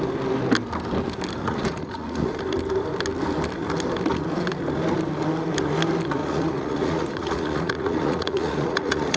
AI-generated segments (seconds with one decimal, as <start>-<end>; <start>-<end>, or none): 1.4-2.4; 6.2-9.2